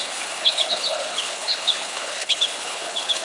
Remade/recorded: remade